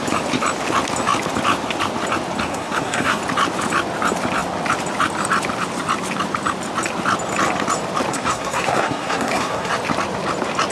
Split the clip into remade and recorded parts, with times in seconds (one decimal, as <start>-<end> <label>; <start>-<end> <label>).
0.0-2.5 recorded; 2.5-3.2 remade; 3.2-8.1 recorded; 8.1-9.7 remade; 9.7-10.7 recorded